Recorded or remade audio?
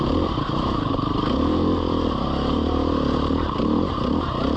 remade